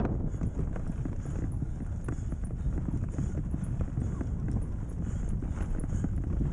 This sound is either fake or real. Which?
real